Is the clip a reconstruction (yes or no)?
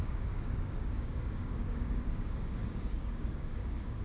yes